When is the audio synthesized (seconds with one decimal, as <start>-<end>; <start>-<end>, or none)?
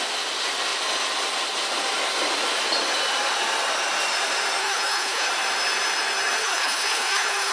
4.6-5.3; 6.4-7.5